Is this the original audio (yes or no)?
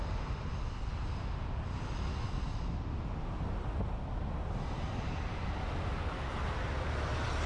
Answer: yes